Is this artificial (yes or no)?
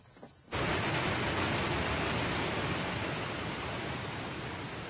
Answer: no